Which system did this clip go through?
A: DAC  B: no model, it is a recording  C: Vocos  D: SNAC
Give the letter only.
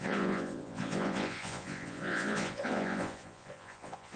C